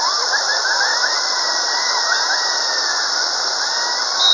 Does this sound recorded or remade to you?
recorded